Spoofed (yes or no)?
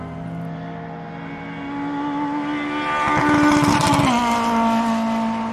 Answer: no